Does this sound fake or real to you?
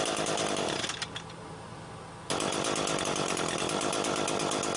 real